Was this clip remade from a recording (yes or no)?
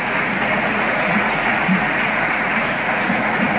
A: yes